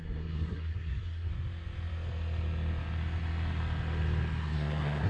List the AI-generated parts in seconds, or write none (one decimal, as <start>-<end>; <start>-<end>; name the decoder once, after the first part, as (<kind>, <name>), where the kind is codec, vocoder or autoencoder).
0.0-1.3 (codec, SNAC); 4.4-5.1